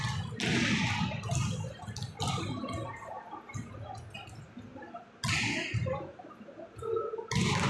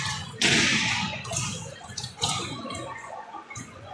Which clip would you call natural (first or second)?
first